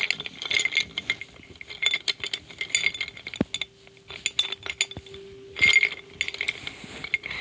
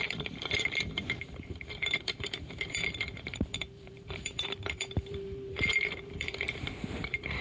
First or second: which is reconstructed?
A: second